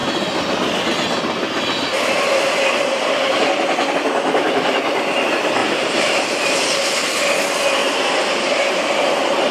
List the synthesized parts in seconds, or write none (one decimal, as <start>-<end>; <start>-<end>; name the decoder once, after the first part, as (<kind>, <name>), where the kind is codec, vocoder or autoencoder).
5.6-6.5 (vocoder, BigVGAN v2); 7.8-9.1